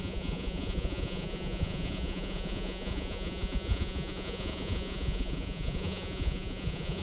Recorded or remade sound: remade